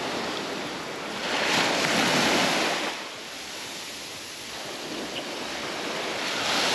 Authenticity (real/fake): real